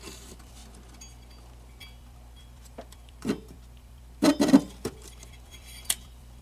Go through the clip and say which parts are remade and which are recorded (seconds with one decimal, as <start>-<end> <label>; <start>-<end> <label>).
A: 0.0-0.6 remade; 0.6-1.8 recorded; 1.8-6.4 remade